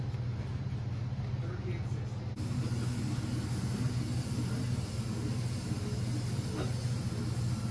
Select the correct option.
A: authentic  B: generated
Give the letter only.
A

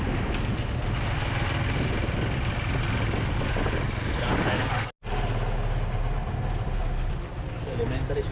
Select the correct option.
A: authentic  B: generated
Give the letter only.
A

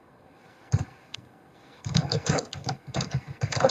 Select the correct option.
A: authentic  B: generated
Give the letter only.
B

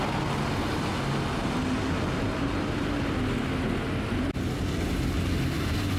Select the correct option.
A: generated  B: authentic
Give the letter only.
B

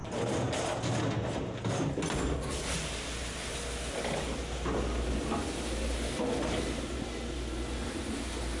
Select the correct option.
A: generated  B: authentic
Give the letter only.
B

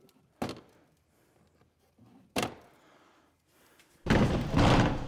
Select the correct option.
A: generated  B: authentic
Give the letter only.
B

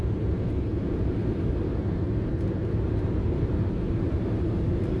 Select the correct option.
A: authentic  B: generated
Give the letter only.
A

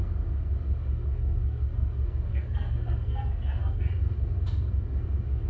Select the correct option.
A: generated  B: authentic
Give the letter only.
A